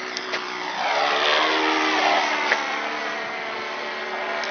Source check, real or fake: real